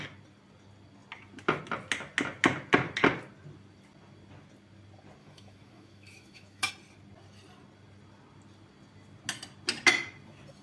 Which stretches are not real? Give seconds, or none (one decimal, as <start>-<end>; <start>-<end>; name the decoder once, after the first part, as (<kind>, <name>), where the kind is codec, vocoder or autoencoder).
5.2-6.7 (autoencoder, DAC-VAE)